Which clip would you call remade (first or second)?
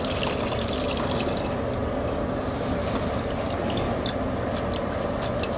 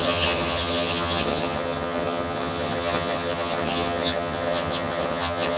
second